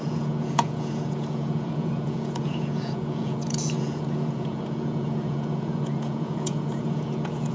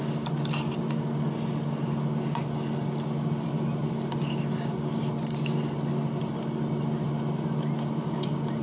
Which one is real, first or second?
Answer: second